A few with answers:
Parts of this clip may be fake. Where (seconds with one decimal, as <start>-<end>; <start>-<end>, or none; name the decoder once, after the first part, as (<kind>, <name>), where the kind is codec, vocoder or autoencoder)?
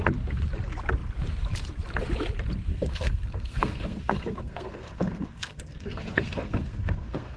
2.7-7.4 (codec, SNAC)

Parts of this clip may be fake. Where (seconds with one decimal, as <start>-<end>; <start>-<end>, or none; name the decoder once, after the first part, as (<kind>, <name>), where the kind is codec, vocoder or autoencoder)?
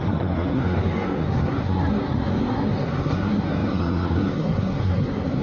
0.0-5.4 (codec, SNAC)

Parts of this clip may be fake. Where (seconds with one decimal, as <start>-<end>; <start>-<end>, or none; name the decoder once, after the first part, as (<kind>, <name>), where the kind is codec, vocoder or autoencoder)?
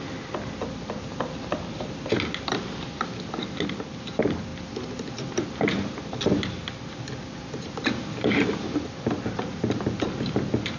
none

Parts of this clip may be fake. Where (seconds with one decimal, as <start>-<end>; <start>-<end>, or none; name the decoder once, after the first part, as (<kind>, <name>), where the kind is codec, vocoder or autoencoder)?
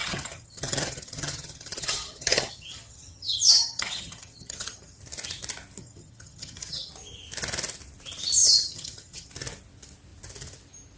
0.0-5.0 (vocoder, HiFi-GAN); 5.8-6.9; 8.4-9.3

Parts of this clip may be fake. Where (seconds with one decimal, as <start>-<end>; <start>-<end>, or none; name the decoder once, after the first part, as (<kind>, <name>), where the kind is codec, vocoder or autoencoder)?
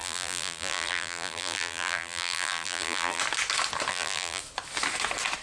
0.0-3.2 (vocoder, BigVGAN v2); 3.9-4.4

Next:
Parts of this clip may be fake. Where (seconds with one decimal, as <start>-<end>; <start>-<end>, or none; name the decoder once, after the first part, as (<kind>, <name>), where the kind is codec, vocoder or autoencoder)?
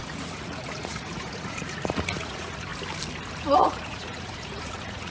0.0-2.7 (vocoder, Vocos); 3.4-5.1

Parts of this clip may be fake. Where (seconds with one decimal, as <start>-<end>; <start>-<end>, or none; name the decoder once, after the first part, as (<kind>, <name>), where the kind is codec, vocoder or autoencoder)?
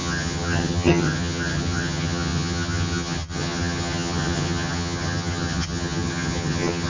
0.0-6.9 (vocoder, HiFi-GAN)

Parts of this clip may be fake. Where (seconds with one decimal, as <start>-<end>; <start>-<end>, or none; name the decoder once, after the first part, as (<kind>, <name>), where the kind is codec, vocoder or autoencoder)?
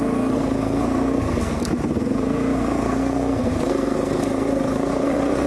0.0-5.5 (codec, SNAC)